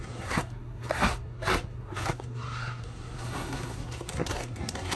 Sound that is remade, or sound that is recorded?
remade